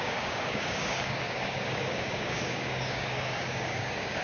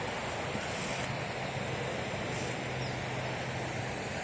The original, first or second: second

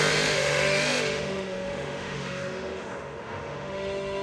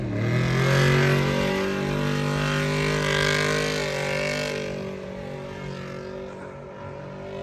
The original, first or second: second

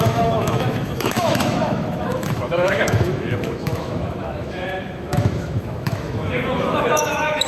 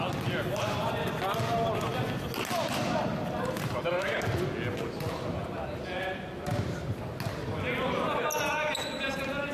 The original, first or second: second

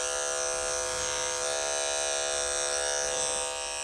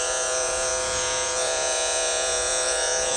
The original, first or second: first